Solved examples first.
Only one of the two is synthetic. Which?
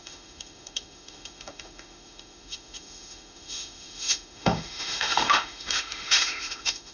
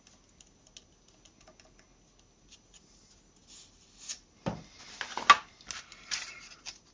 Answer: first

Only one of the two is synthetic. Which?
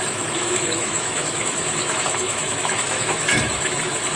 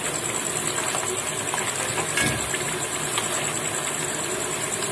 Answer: first